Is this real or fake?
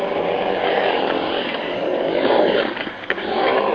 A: fake